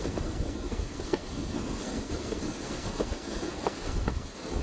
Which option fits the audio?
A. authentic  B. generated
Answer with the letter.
B